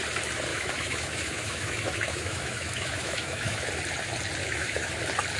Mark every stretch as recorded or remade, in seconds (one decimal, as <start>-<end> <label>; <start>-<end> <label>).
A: 0.0-0.5 recorded; 0.5-3.7 remade; 3.7-4.4 recorded; 4.4-4.9 remade; 4.9-5.4 recorded